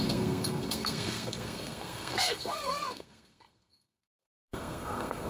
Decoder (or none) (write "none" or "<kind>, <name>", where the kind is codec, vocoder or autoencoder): codec, SNAC